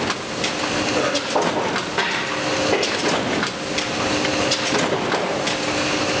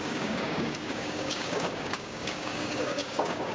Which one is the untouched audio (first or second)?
first